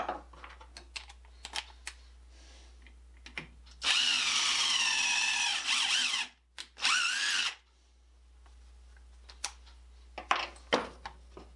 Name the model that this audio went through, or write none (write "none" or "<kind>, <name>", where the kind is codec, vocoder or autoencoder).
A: none